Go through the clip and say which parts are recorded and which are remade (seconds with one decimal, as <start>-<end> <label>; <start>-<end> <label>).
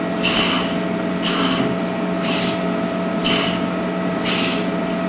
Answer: 0.0-5.1 recorded